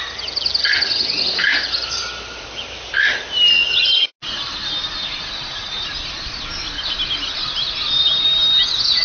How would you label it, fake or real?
real